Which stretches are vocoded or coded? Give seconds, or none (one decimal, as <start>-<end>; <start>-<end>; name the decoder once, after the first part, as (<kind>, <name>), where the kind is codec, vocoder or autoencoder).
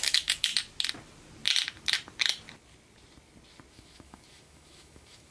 0.0-0.5 (autoencoder, DAC-VAE); 3.7-5.3